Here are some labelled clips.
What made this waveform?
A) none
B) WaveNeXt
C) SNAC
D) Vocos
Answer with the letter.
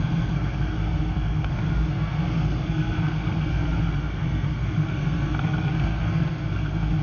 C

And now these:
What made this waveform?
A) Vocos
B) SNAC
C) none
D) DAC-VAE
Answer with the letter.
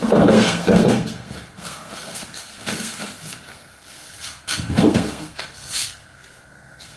B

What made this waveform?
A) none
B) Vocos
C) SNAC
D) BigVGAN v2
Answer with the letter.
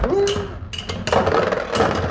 A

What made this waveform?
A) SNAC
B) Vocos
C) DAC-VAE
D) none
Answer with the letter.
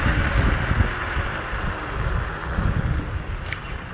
D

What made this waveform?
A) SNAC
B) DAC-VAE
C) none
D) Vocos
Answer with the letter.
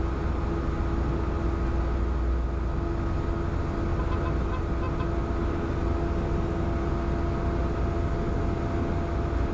C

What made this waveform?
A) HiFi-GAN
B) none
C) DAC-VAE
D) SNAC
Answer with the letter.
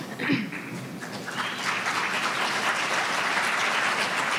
B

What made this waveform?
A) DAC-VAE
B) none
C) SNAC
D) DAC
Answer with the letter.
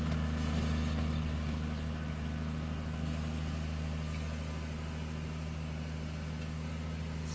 B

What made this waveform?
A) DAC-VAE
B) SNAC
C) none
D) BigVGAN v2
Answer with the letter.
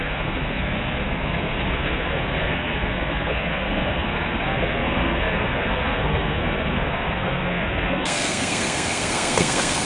B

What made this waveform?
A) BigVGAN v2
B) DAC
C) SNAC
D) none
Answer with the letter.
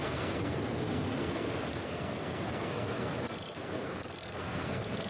C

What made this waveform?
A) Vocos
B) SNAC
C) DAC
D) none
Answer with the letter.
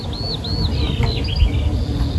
D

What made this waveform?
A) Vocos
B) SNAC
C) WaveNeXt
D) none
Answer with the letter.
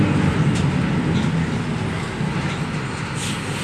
D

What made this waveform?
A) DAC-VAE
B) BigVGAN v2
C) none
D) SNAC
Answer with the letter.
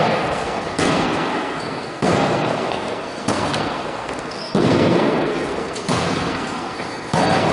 D